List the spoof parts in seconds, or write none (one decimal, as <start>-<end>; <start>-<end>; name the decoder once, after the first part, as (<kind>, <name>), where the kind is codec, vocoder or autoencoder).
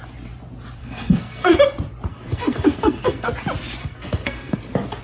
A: 0.8-1.6 (codec, SNAC); 2.1-3.3; 3.8-4.6